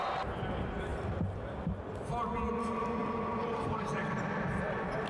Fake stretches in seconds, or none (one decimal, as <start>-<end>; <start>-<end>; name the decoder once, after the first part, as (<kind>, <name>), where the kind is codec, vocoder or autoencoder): none